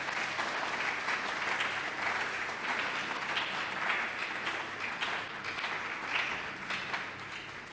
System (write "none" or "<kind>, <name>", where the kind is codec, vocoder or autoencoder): none